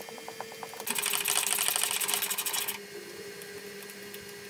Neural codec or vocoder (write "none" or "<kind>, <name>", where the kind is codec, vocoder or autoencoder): none